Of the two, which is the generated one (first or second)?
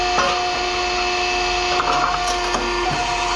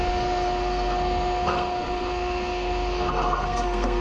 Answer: second